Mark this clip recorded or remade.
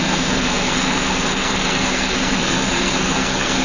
remade